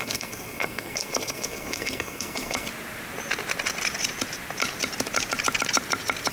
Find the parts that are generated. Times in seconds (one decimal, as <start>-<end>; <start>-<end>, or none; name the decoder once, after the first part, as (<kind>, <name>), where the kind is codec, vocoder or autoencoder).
0.0-2.7 (codec, SNAC)